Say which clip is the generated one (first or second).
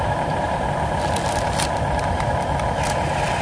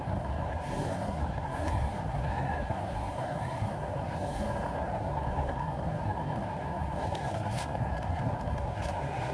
second